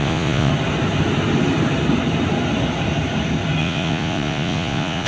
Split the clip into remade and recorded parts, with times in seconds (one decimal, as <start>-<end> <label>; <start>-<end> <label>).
0.0-0.5 remade; 0.5-3.6 recorded; 3.6-5.1 remade